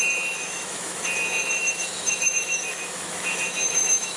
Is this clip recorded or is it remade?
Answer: remade